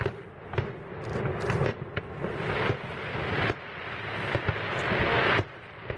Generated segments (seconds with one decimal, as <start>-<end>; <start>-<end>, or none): none